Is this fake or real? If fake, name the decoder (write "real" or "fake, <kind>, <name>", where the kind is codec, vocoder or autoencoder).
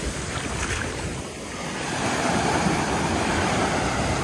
fake, vocoder, BigVGAN v2